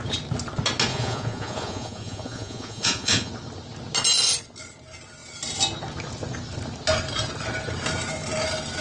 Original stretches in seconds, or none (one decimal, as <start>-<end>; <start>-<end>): 0.0-0.9; 3.3-8.8